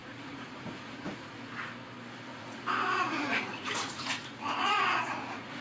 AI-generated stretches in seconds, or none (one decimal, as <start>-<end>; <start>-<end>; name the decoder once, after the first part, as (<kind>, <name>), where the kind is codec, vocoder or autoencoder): 0.0-1.3 (vocoder, Vocos); 2.3-5.6